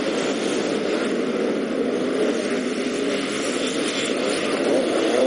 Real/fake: real